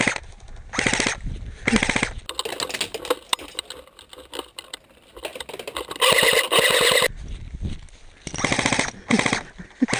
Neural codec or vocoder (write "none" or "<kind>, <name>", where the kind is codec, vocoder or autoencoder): none